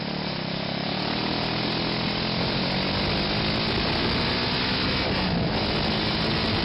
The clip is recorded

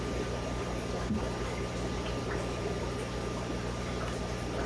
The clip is recorded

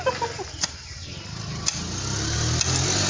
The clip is recorded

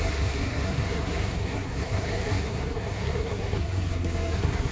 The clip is remade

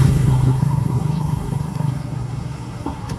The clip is remade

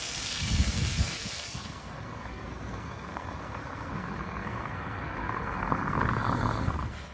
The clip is remade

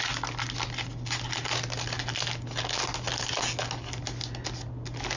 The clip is recorded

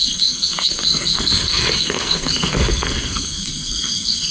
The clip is remade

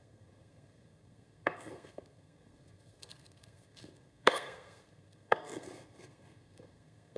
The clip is remade